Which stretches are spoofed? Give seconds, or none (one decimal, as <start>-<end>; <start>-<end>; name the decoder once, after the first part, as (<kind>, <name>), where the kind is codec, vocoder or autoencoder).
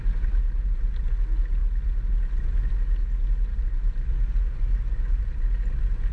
none